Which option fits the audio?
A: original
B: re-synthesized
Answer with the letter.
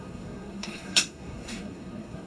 B